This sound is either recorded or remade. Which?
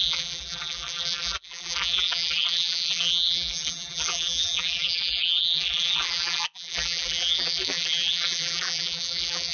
remade